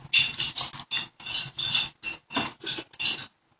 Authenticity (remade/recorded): recorded